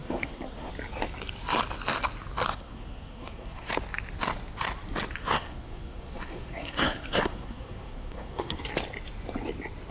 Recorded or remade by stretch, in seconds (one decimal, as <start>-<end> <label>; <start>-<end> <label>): 0.0-0.7 remade; 0.7-2.5 recorded; 2.5-3.7 remade; 3.7-5.2 recorded; 5.2-8.6 remade; 8.6-9.9 recorded